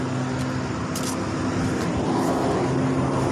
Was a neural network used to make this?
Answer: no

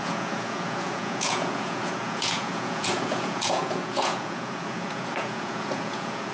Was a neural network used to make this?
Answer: yes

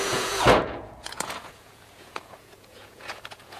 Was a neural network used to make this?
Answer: yes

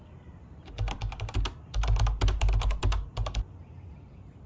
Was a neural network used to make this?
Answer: no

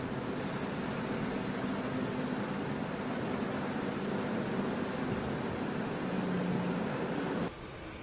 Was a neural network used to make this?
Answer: no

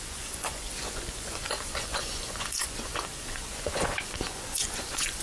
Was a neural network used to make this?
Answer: yes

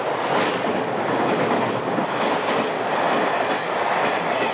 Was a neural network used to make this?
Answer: no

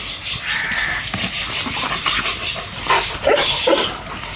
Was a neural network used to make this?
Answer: no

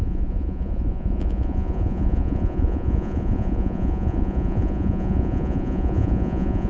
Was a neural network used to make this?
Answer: yes